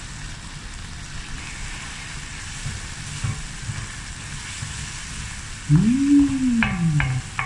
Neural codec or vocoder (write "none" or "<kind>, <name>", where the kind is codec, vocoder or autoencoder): none